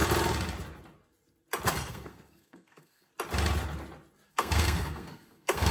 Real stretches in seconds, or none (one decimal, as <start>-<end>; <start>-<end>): 0.0-1.7; 3.1-4.3